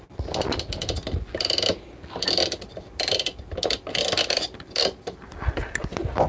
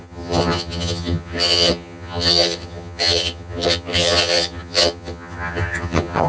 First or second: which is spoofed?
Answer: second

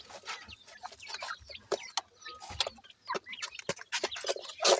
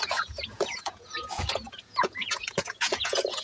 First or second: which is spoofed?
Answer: second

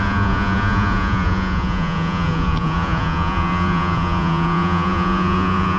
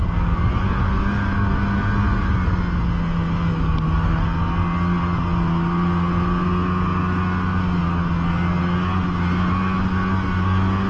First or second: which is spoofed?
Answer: first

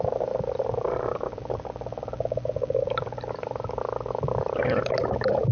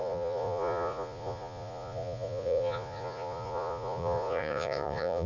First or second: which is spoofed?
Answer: second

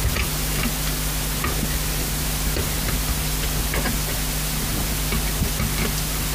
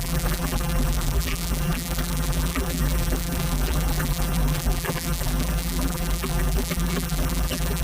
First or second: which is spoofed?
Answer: second